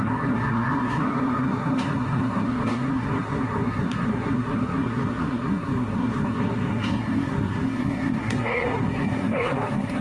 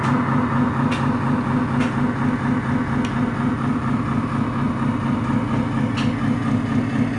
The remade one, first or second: first